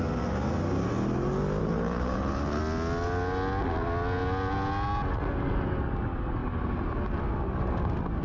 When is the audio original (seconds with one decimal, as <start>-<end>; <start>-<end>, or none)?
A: 0.0-1.6; 2.6-8.2